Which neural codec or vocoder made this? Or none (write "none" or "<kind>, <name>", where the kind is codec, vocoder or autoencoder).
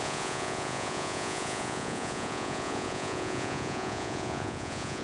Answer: vocoder, Vocos